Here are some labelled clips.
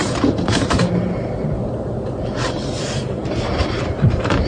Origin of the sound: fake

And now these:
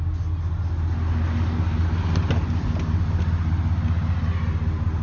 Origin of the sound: real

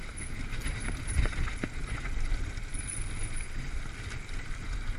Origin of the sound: real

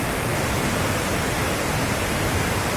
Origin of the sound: fake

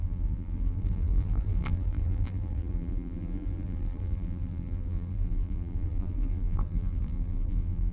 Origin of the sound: fake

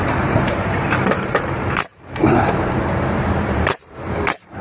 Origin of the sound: fake